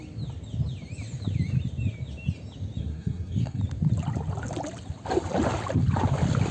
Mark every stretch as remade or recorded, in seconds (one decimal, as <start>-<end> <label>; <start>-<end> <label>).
0.0-2.8 recorded; 2.8-3.6 remade; 3.6-6.5 recorded